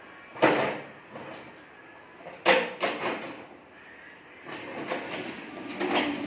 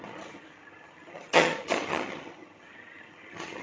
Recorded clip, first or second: first